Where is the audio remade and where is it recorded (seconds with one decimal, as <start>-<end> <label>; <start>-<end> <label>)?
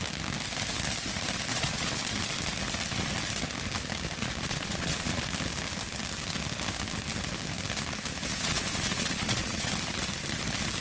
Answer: 0.0-1.5 recorded; 1.5-2.0 remade; 2.0-4.2 recorded; 4.2-5.2 remade; 5.2-8.3 recorded; 8.3-9.7 remade; 9.7-10.8 recorded